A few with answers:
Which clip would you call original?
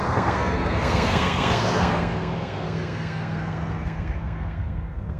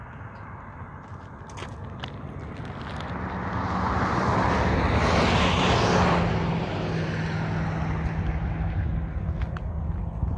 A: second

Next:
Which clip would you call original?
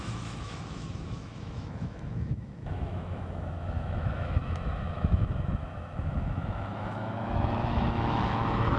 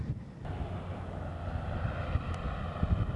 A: second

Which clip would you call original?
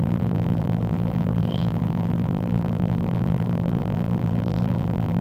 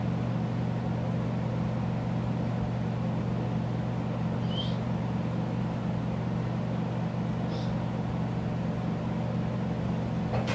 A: second